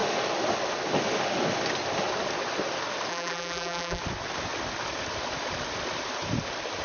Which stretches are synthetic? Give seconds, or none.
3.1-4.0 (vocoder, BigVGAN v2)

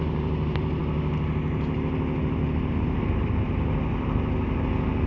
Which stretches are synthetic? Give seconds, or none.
0.0-0.8 (vocoder, BigVGAN v2); 2.2-3.9

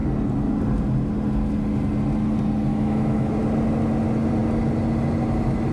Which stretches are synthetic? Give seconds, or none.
2.7-3.3 (autoencoder, DAC-VAE)

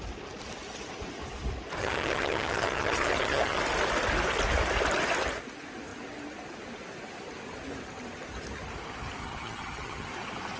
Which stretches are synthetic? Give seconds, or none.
1.8-3.6 (vocoder, HiFi-GAN); 9.2-10.1